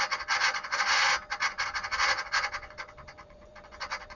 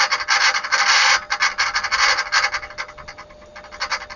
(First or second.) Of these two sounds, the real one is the second